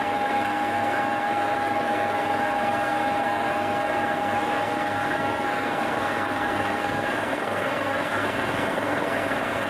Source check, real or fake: fake